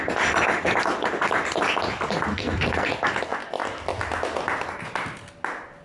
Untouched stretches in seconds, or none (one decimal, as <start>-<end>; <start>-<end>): 0.0-2.3; 2.9-5.8